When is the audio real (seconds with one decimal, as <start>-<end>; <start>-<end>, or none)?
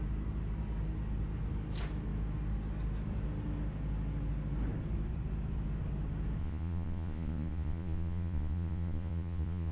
0.0-6.4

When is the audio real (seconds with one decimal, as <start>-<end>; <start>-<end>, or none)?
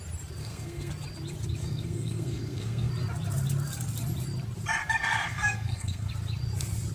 0.0-0.4; 0.9-1.6; 2.9-4.8; 6.1-6.9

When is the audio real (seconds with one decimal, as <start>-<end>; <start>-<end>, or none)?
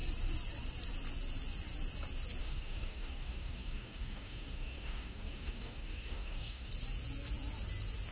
0.0-2.4; 6.7-8.1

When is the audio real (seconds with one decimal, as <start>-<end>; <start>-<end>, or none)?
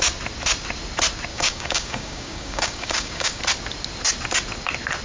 0.0-1.3; 3.4-5.0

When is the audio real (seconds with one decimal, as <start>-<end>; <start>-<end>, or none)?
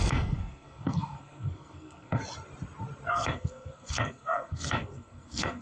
2.2-3.1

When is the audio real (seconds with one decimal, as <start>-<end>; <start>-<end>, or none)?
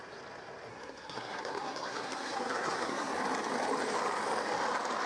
0.0-0.7; 3.1-5.1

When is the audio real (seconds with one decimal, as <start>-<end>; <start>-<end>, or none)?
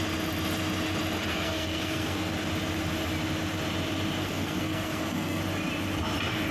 0.0-1.3; 2.3-4.2; 5.4-6.5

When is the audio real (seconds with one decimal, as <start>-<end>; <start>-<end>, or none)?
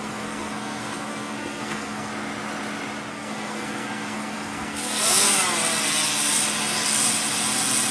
2.1-3.1; 5.4-7.9